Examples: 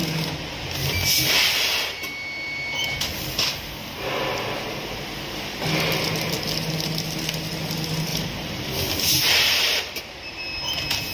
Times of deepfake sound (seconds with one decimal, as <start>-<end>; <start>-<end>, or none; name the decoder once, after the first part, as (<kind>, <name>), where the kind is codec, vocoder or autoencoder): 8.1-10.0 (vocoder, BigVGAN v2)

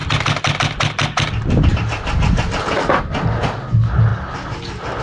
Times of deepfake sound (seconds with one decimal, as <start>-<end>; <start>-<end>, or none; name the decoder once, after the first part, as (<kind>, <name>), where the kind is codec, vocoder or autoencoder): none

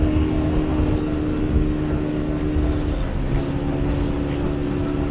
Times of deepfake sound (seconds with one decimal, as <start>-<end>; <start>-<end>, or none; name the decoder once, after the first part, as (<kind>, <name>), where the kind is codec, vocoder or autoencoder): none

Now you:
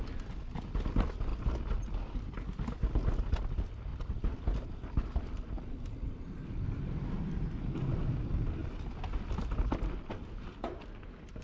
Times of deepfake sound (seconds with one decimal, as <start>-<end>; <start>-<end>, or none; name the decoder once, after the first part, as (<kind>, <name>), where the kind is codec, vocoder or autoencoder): 3.9-6.2 (vocoder, BigVGAN v2)

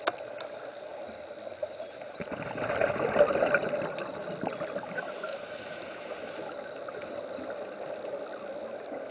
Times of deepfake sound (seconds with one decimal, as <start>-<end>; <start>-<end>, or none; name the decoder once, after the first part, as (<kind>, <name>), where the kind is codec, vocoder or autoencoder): 1.6-2.2 (vocoder, BigVGAN v2); 5.3-6.0